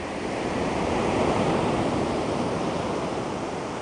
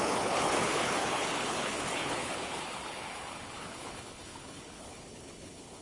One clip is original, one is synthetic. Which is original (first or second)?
first